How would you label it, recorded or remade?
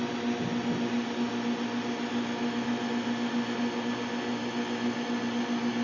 recorded